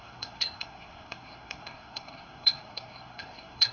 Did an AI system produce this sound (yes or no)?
yes